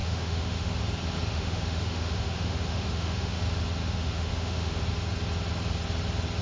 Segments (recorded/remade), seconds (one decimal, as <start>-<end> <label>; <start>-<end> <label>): 0.0-0.8 remade; 0.8-1.3 recorded; 1.3-3.4 remade; 3.4-3.8 recorded; 3.8-4.8 remade; 4.8-6.4 recorded